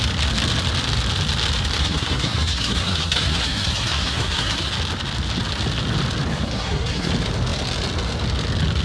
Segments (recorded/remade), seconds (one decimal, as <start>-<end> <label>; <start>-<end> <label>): 0.0-1.8 recorded; 1.8-4.7 remade; 4.7-6.3 recorded; 6.3-7.1 remade; 7.1-8.8 recorded

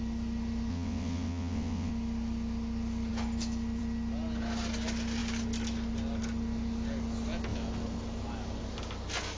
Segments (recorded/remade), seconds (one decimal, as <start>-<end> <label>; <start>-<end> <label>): 0.0-0.7 recorded; 0.7-1.9 remade; 1.9-9.4 recorded

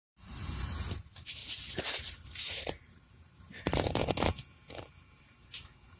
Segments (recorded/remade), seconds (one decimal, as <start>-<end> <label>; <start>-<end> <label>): 0.0-0.4 remade; 0.4-1.0 recorded; 1.0-4.0 remade; 4.0-4.7 recorded; 4.7-6.0 remade

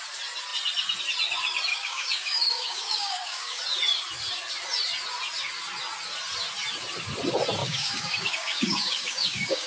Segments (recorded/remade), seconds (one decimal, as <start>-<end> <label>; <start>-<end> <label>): 0.0-1.7 recorded; 1.7-3.6 remade; 3.6-7.6 recorded; 7.6-9.7 remade

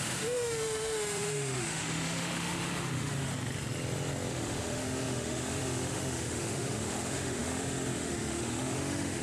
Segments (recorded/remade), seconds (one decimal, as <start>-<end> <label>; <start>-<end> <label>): 0.0-3.3 remade; 3.3-4.3 recorded; 4.3-9.2 remade

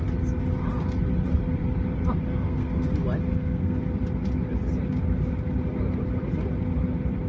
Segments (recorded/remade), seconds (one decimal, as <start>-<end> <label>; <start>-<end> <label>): 0.0-2.3 recorded; 2.3-2.9 remade; 2.9-3.3 recorded; 3.3-3.8 remade; 3.8-7.3 recorded

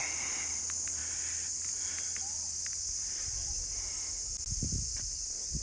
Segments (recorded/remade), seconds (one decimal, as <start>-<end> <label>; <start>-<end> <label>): 0.0-5.6 recorded